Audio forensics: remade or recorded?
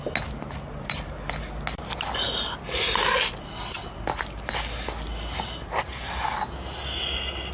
recorded